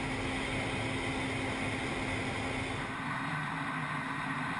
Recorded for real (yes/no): yes